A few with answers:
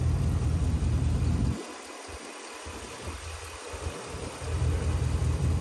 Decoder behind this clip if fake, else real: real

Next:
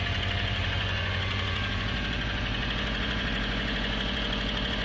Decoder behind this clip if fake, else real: fake, vocoder, Vocos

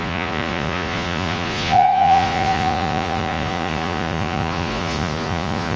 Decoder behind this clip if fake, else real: fake, vocoder, Vocos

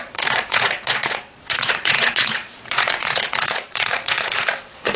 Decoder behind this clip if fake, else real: fake, vocoder, Vocos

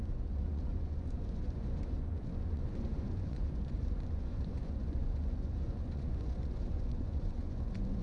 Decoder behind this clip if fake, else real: fake, vocoder, Vocos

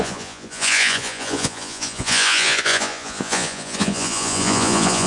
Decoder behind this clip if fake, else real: fake, vocoder, Vocos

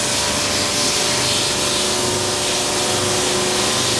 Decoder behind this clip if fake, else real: real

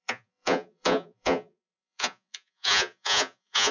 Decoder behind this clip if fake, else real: fake, vocoder, Vocos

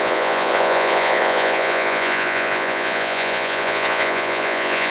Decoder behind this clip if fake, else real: fake, vocoder, Vocos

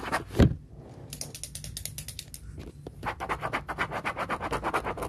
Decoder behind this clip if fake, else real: real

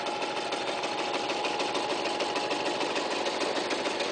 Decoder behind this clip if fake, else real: real